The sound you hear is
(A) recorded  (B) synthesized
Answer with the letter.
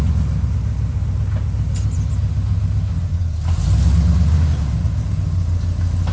A